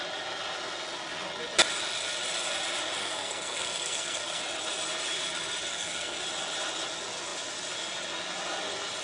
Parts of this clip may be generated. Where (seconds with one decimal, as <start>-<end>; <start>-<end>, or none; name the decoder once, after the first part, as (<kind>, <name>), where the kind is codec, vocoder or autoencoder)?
3.0-4.4 (codec, SNAC); 5.7-6.2